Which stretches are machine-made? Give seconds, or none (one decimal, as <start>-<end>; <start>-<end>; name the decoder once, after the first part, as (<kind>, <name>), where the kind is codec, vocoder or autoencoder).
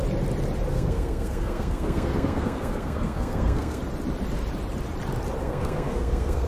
0.7-3.8 (codec, SNAC); 5.4-6.5